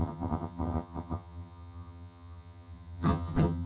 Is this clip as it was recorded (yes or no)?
no